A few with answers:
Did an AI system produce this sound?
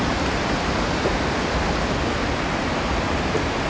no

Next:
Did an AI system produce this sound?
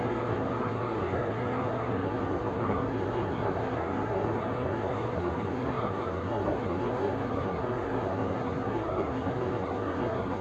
yes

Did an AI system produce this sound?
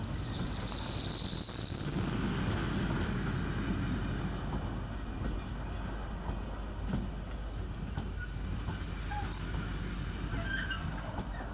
no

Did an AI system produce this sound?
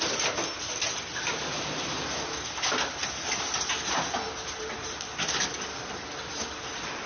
no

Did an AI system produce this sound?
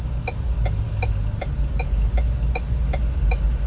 no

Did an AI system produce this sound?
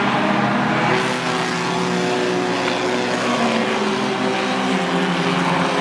no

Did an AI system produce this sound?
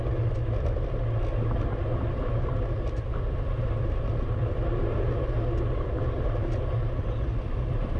no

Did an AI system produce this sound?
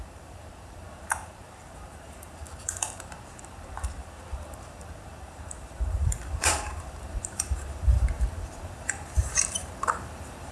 yes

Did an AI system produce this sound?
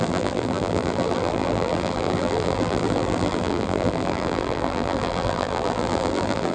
yes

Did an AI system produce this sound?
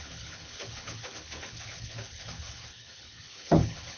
yes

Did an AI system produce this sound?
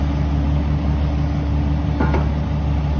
no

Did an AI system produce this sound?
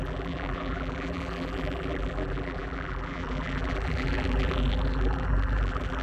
yes